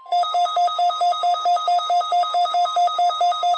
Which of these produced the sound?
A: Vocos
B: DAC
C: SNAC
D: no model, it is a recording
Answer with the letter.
B